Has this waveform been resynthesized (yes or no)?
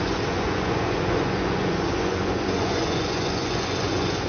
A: yes